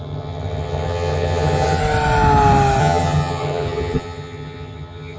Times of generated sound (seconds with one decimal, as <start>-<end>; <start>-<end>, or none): 0.0-1.8; 2.8-5.2